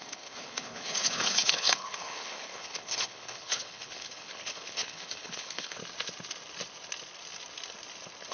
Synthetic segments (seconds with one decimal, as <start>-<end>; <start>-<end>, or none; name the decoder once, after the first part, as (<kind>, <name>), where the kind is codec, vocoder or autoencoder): 0.0-5.8 (codec, HILCodec)